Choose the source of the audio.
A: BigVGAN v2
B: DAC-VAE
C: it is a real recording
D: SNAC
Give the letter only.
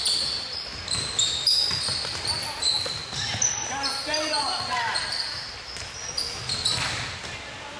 C